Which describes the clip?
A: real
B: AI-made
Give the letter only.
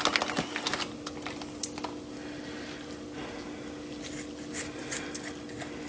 A